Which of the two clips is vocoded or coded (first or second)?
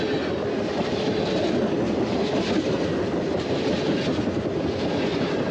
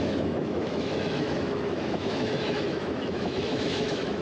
second